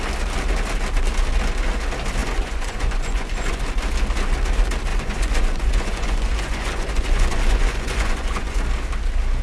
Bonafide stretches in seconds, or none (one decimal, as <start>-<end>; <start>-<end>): 0.0-2.2; 3.6-4.9; 8.6-9.4